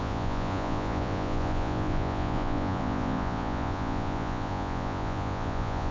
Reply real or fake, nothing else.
fake